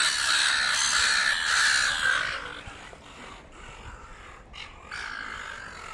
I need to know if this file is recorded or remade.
recorded